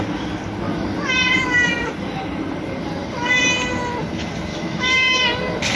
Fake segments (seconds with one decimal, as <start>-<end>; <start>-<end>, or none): 4.5-5.2